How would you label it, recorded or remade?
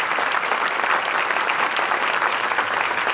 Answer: remade